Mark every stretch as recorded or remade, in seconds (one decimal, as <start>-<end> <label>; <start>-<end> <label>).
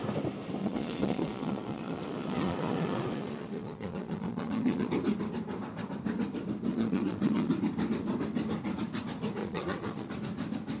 0.0-0.6 recorded; 0.6-4.9 remade; 4.9-6.7 recorded; 6.7-7.5 remade; 7.5-9.4 recorded; 9.4-10.1 remade; 10.1-10.8 recorded